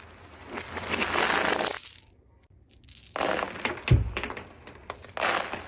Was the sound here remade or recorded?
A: recorded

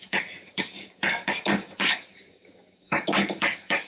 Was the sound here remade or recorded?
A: remade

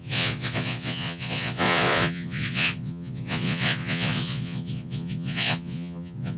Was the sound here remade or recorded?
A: remade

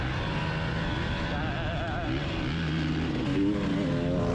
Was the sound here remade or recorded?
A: recorded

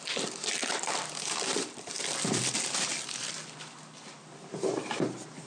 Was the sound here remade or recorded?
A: remade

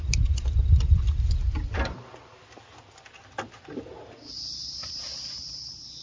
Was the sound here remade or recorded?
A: recorded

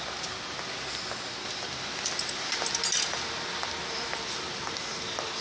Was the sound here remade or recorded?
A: recorded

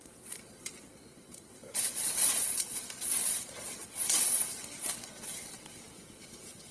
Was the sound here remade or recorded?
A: remade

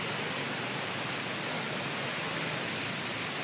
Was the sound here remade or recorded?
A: recorded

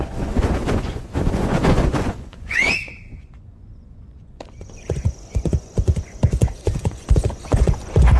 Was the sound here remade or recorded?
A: remade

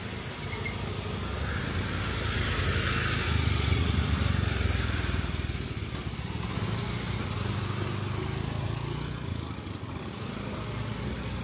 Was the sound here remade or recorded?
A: recorded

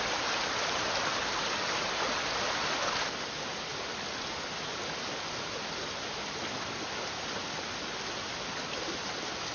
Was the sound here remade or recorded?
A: recorded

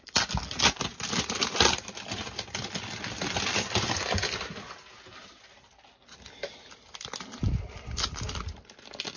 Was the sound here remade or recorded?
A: recorded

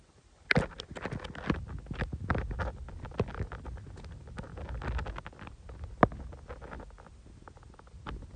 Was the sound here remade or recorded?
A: recorded